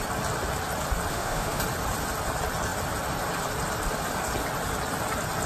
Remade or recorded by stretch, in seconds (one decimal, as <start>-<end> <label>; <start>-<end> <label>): 0.0-1.1 recorded; 1.1-1.6 remade; 1.6-5.5 recorded